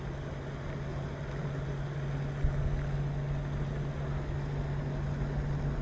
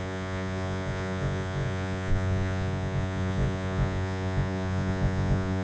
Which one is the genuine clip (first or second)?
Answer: first